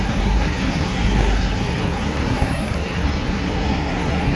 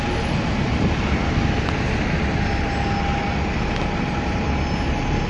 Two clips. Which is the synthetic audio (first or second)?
first